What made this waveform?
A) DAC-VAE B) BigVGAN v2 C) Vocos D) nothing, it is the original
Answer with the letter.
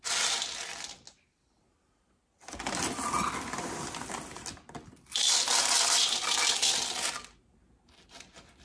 D